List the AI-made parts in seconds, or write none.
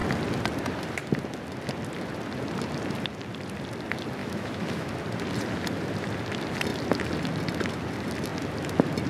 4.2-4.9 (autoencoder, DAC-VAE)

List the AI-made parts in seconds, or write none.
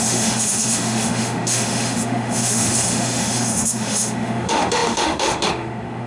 0.0-6.1 (autoencoder, DAC-VAE)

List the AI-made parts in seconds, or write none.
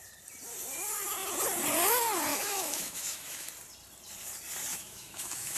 2.3-3.5 (autoencoder, DAC-VAE); 4.7-5.6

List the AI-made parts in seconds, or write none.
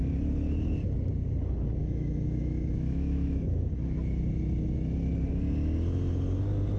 1.8-3.7 (autoencoder, DAC-VAE)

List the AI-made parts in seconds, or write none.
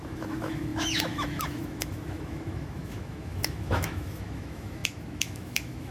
0.0-5.9 (autoencoder, DAC-VAE)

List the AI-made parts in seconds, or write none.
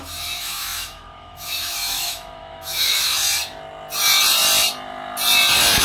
0.0-3.2 (autoencoder, DAC-VAE)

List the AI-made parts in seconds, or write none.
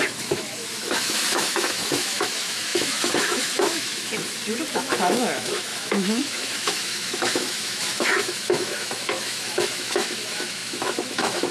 0.0-4.1 (autoencoder, DAC-VAE); 4.7-11.5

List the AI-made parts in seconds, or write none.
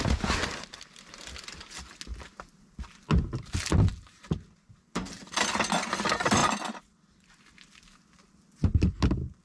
none